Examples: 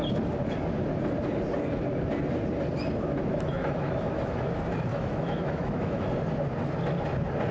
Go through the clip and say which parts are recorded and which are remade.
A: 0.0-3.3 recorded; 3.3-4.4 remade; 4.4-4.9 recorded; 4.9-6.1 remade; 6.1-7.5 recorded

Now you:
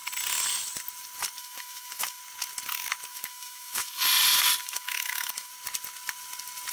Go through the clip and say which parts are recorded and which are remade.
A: 0.0-1.4 recorded; 1.4-2.2 remade; 2.2-3.1 recorded; 3.1-4.0 remade; 4.0-4.6 recorded; 4.6-5.5 remade; 5.5-6.7 recorded

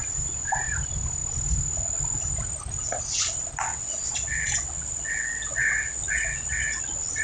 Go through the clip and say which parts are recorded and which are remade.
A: 0.0-3.7 recorded; 3.7-6.8 remade; 6.8-7.2 recorded